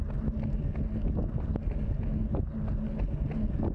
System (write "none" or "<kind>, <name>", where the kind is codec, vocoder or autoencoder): none